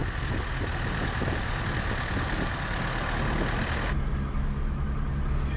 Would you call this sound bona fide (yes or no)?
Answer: yes